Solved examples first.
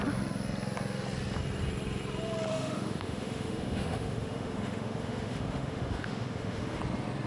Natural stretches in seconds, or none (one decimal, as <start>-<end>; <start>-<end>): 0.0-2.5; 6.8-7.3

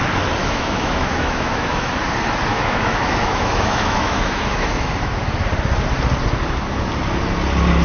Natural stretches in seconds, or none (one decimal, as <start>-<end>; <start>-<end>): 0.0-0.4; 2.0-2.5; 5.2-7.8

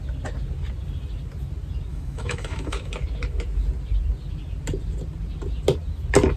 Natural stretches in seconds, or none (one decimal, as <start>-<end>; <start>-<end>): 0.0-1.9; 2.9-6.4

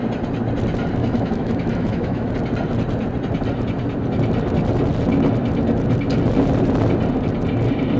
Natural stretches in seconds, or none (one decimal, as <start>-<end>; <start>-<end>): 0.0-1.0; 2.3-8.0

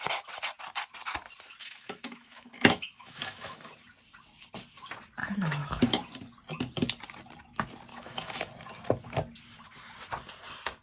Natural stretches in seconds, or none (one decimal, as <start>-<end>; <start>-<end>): 0.0-1.6; 3.7-5.2; 5.8-7.9; 8.5-10.8